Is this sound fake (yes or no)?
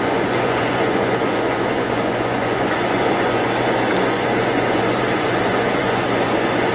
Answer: yes